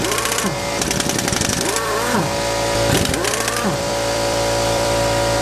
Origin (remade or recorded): remade